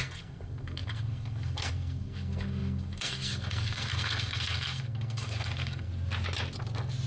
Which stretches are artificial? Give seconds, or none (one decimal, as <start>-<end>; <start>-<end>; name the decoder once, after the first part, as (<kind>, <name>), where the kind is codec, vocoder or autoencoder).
0.0-5.9 (codec, SNAC)